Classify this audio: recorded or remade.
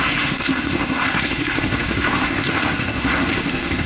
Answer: remade